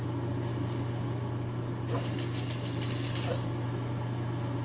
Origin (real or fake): real